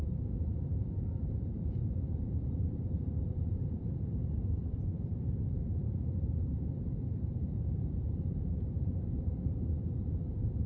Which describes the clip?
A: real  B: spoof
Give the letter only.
B